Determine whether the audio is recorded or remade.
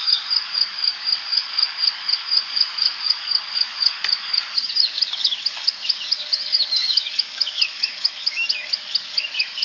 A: remade